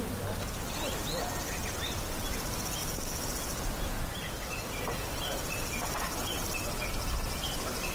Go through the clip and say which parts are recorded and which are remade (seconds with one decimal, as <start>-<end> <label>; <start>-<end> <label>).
0.0-7.9 recorded